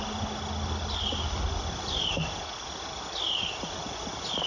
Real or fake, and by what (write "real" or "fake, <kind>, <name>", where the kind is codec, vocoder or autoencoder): real